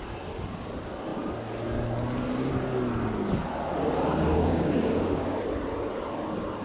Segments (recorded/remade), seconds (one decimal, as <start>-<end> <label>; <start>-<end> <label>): 0.0-4.3 recorded; 4.3-5.4 remade; 5.4-6.6 recorded